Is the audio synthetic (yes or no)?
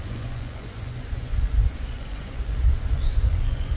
yes